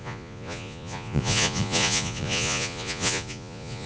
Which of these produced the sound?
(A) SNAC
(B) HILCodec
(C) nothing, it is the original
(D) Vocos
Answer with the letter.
D